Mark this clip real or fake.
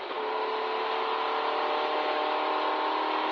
real